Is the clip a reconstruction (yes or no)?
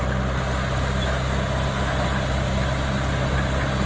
no